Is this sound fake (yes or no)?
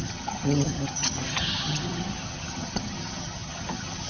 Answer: yes